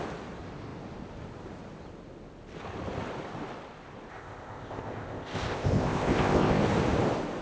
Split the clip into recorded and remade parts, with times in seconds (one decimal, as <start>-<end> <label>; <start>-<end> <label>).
0.0-4.1 recorded; 4.1-6.6 remade; 6.6-7.4 recorded